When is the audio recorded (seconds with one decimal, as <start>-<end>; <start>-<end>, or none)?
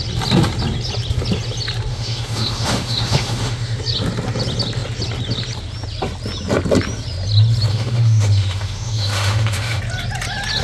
0.0-1.9; 3.8-7.7; 9.8-10.6